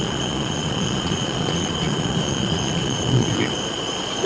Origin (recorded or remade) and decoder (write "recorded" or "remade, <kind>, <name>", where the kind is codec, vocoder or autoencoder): remade, vocoder, Vocos